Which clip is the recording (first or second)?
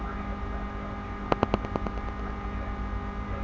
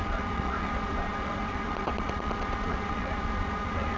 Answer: first